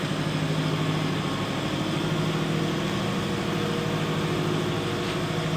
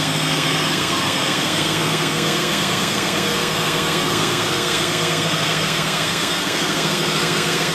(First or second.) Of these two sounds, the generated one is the second